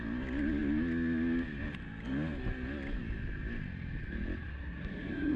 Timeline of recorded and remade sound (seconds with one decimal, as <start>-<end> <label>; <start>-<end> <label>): 0.0-4.5 recorded; 4.5-5.4 remade